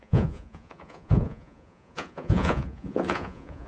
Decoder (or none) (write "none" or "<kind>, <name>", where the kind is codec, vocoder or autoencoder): vocoder, Vocos